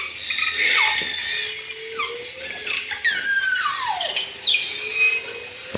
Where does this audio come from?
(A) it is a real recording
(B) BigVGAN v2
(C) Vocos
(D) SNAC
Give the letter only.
A